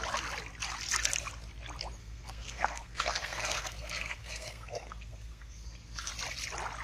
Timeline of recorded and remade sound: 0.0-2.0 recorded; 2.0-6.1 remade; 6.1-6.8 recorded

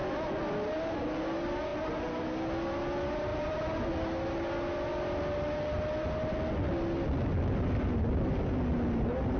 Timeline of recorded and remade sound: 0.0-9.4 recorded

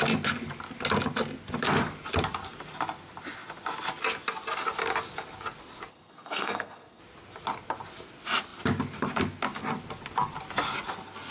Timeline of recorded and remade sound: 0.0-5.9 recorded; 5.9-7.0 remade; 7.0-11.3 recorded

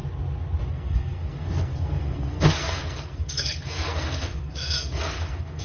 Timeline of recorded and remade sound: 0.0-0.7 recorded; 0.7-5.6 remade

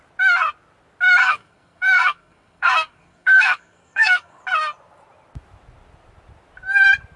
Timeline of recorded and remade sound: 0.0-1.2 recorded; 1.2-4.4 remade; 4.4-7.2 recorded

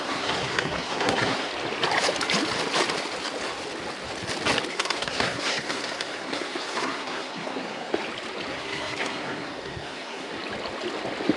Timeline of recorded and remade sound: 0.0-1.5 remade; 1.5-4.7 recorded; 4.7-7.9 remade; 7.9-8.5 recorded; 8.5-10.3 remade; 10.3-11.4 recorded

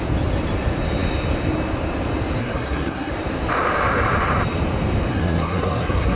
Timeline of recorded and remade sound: 0.0-2.4 recorded; 2.4-3.1 remade; 3.1-5.1 recorded; 5.1-6.2 remade